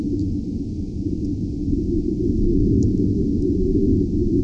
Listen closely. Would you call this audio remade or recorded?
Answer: recorded